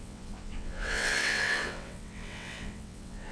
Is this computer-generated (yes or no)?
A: yes